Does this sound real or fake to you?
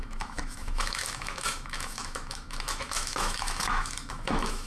fake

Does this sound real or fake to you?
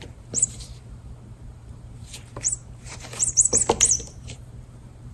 fake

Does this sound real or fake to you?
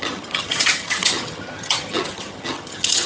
fake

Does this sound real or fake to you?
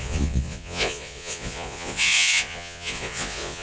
fake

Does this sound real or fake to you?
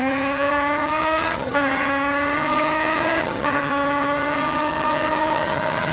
fake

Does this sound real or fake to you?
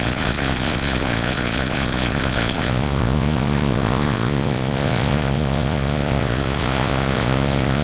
fake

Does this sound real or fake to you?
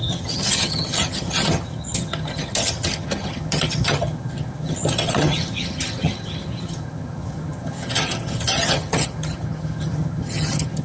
fake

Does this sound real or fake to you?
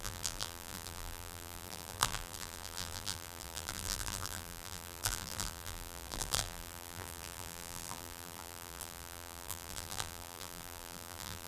fake